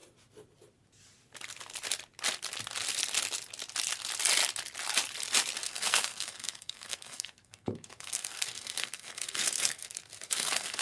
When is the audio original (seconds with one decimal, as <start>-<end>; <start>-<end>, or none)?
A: 0.0-5.6

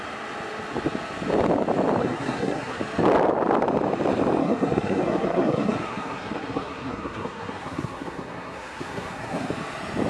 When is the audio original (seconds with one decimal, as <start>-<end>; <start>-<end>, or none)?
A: 0.0-2.0; 2.8-4.4; 9.5-10.1

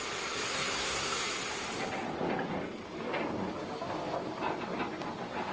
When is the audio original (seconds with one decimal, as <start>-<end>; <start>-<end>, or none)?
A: 0.0-0.5; 1.2-5.5

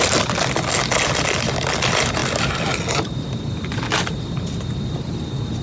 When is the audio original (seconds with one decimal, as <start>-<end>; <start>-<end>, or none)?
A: 0.0-5.6

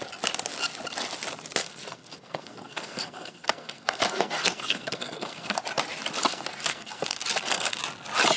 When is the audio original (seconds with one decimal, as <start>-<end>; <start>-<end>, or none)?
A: 0.0-1.6; 5.6-6.3; 7.8-8.4

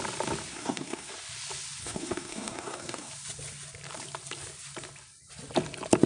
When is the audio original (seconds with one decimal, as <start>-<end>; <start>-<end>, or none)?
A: 0.0-0.5; 1.1-1.8; 3.1-6.1